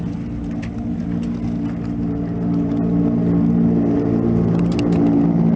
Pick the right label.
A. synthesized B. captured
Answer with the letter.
B